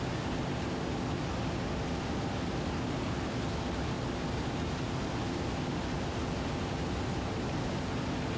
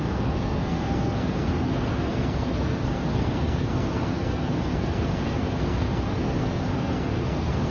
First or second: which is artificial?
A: second